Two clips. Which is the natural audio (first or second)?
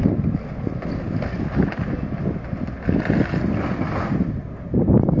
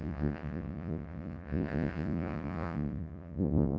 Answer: first